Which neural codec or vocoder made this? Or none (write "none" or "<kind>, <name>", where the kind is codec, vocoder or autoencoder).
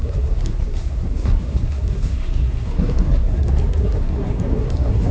codec, SNAC